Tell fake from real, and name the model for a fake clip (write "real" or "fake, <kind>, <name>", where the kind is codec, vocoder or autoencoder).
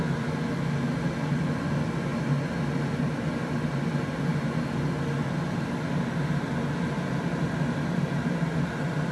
real